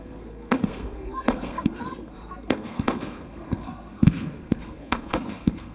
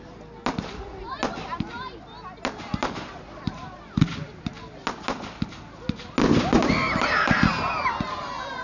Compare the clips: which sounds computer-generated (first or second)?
first